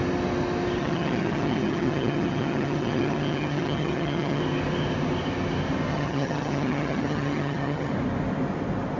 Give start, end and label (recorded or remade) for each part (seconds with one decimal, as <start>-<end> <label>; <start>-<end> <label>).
0.0-0.8 recorded; 0.8-4.4 remade; 4.4-5.9 recorded; 5.9-7.9 remade; 7.9-9.0 recorded